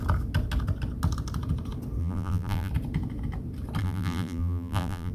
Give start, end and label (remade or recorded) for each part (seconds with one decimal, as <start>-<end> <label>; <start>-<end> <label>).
0.0-2.0 recorded; 2.0-2.7 remade; 2.7-3.8 recorded; 3.8-5.1 remade